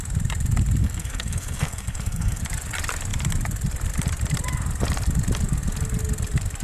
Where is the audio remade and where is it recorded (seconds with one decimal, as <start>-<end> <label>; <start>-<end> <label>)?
0.0-0.8 recorded; 0.8-2.4 remade; 2.4-6.6 recorded